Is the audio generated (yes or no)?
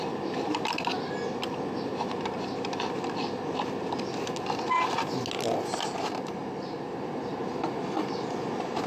no